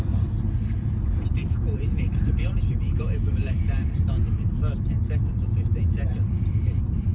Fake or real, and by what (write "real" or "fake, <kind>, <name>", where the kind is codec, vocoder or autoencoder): fake, vocoder, BigVGAN v2